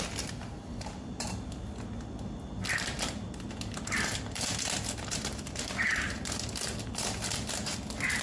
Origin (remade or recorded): recorded